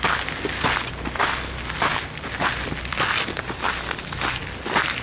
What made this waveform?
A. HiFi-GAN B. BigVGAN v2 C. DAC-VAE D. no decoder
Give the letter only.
D